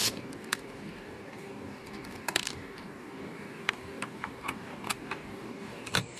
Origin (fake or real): fake